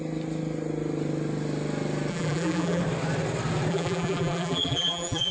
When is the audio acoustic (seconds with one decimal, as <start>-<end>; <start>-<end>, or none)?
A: 0.0-2.1; 2.8-3.7